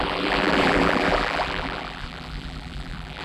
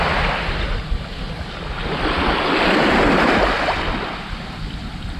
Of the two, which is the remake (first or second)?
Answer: first